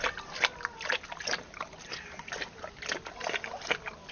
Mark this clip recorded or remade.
recorded